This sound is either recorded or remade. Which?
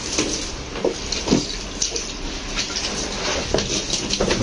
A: recorded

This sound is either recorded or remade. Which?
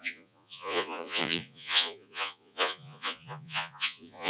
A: remade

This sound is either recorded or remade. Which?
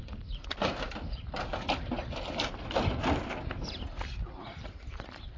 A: recorded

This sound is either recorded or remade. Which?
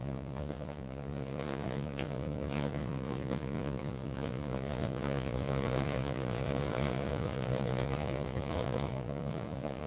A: remade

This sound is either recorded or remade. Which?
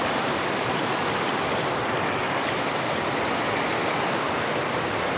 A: recorded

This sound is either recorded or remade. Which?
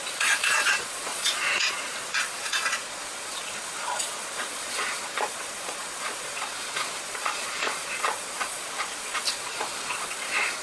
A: remade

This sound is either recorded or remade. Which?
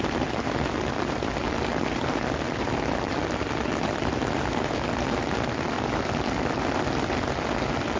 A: recorded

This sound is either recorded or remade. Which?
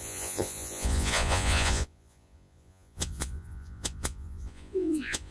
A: remade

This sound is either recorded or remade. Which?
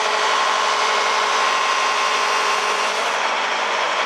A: remade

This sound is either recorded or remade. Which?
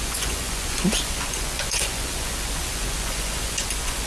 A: remade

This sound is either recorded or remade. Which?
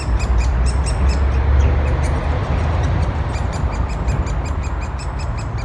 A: recorded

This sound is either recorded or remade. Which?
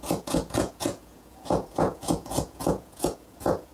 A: remade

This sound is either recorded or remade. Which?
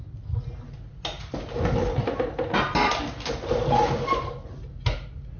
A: recorded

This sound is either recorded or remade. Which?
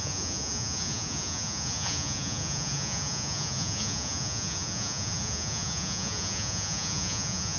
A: remade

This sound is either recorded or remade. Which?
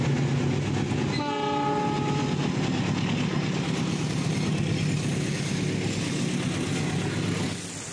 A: recorded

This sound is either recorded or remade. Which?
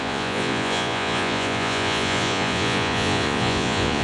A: remade